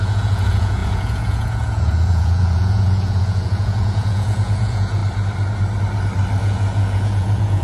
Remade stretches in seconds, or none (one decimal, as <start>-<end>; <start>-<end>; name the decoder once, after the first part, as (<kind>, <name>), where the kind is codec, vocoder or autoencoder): 0.0-5.0 (vocoder, Vocos); 6.4-7.6